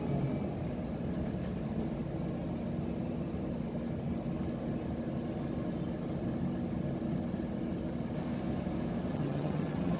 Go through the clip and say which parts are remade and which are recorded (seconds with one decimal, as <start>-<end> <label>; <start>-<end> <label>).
0.0-9.1 recorded; 9.1-10.0 remade